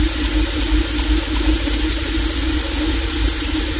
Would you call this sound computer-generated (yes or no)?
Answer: no